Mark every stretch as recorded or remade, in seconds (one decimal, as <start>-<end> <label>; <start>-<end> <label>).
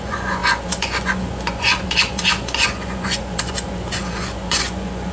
0.0-5.1 remade